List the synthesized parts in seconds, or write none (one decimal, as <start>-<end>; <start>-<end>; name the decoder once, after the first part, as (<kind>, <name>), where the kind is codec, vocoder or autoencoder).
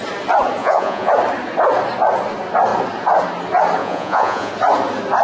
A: 0.6-1.1 (vocoder, Vocos); 3.8-4.5